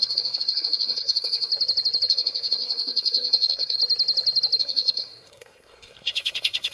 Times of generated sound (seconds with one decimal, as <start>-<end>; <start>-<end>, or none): 0.0-1.5; 2.1-3.8; 4.6-6.7